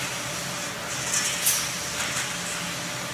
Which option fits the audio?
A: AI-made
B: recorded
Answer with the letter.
B